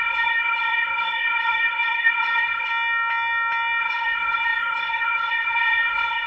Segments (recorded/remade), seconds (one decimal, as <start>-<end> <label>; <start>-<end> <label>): 0.0-2.7 remade; 2.7-3.8 recorded; 3.8-6.3 remade